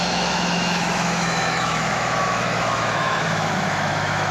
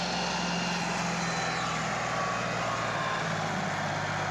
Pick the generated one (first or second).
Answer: first